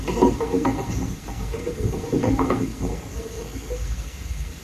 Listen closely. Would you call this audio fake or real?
fake